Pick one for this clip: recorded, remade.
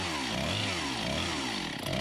recorded